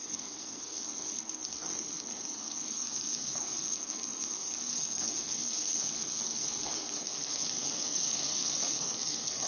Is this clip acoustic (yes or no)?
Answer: no